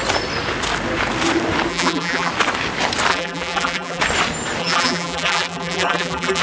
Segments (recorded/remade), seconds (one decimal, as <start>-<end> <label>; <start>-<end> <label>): 0.0-1.7 recorded; 1.7-2.3 remade; 2.3-3.1 recorded; 3.1-4.0 remade; 4.0-4.6 recorded; 4.6-6.4 remade